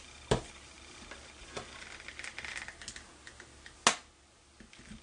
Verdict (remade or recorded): recorded